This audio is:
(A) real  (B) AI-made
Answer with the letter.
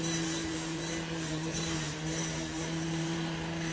B